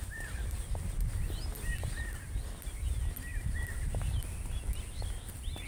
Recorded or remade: recorded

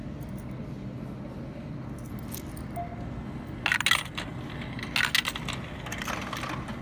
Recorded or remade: recorded